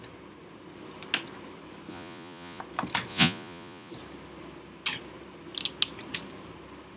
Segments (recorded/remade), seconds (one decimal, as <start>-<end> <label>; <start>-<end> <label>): 0.0-1.9 recorded; 1.9-2.6 remade; 2.6-3.1 recorded; 3.1-3.9 remade; 3.9-7.0 recorded